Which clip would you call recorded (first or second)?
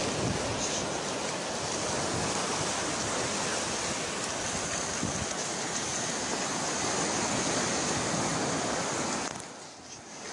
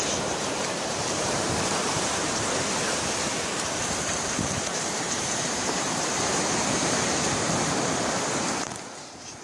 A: first